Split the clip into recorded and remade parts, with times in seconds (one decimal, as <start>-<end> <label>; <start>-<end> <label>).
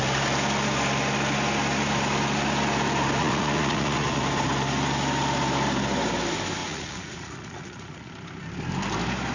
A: 0.0-3.2 recorded; 3.2-4.2 remade; 4.2-6.6 recorded; 6.6-8.1 remade; 8.1-9.3 recorded